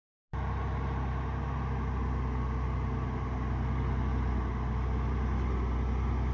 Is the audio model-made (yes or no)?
no